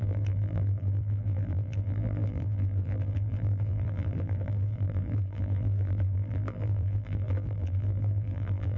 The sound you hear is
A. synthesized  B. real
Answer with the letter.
A